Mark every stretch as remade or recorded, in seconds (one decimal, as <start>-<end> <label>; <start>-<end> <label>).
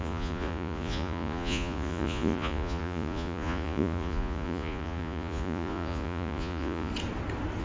0.0-6.9 remade; 6.9-7.6 recorded